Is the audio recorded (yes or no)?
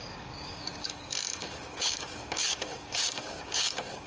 no